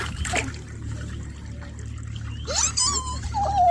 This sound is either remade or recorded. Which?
recorded